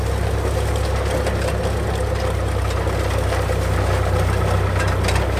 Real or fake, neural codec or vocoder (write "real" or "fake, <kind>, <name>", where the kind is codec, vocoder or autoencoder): real